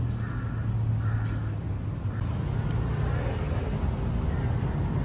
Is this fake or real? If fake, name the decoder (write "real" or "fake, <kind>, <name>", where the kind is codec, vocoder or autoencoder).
real